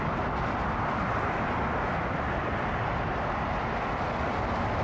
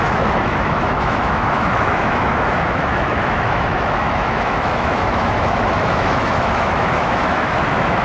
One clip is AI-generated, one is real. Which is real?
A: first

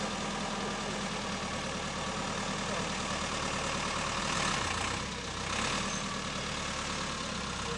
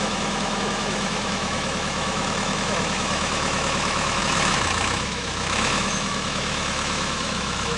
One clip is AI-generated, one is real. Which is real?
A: first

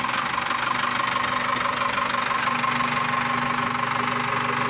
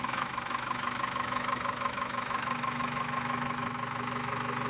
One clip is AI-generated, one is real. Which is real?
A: first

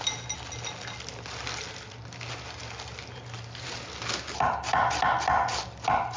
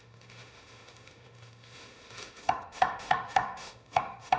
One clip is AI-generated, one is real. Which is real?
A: first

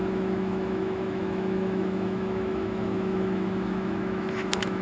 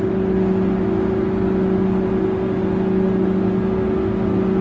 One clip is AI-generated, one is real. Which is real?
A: second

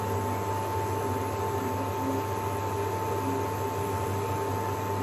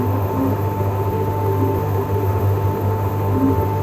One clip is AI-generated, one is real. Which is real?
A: first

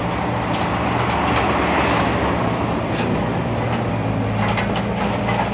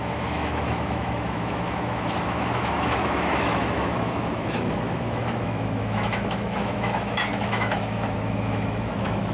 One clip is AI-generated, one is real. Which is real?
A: first